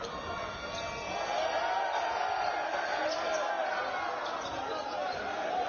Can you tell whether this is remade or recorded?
recorded